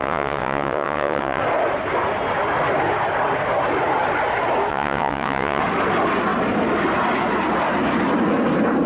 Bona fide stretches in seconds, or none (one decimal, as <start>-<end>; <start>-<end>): 1.4-4.7; 5.6-8.9